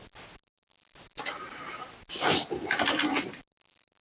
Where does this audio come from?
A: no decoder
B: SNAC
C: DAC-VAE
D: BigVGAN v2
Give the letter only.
A